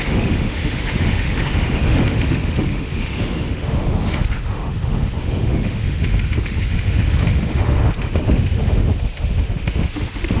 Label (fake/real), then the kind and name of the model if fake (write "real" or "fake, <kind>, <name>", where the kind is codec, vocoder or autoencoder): fake, autoencoder, DAC-VAE